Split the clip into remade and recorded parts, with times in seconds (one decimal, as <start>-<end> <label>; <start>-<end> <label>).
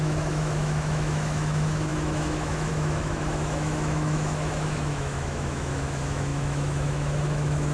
0.0-7.7 remade